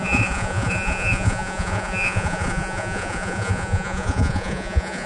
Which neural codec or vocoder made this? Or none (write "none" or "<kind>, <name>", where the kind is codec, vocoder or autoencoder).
vocoder, Vocos